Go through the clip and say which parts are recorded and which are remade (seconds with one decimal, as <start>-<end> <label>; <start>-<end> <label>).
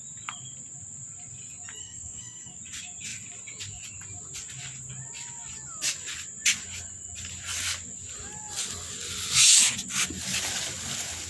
0.0-1.8 recorded; 1.8-2.6 remade; 2.6-11.3 recorded